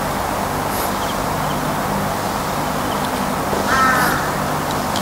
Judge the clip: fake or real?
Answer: real